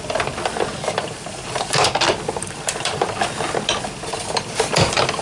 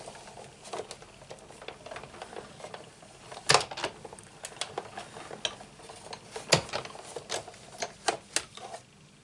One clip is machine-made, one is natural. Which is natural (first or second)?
second